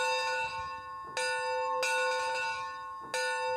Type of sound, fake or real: real